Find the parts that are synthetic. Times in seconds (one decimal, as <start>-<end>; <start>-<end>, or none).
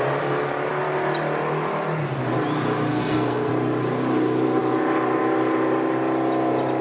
2.9-3.5